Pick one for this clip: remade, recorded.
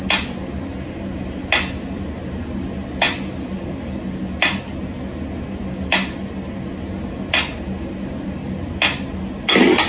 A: recorded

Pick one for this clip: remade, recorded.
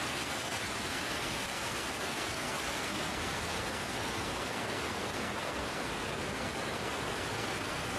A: remade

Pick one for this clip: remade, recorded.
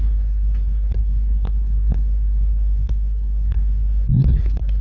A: remade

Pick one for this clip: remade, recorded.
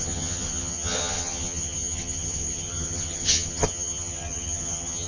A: remade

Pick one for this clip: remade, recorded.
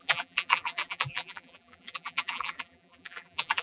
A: remade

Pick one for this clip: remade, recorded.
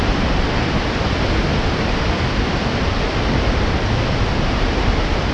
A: remade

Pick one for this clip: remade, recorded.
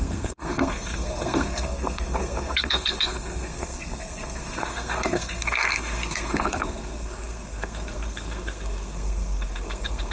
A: remade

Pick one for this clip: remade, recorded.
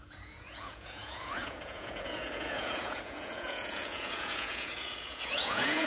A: remade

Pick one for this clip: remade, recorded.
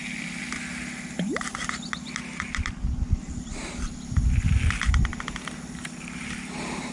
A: remade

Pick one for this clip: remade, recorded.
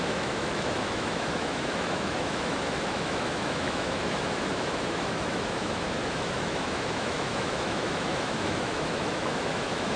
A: remade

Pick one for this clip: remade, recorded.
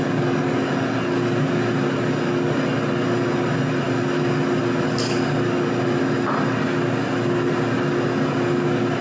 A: recorded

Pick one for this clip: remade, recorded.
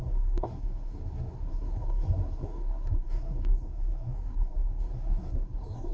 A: remade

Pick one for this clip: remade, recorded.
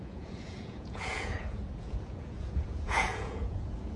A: remade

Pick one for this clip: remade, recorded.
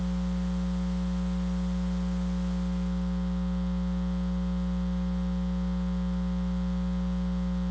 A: recorded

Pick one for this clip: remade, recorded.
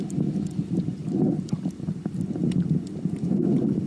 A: remade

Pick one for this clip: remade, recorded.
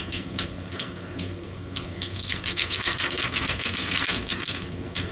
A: remade